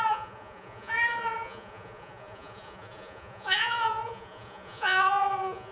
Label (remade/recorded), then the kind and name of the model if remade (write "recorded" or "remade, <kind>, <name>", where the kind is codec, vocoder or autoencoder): remade, vocoder, Vocos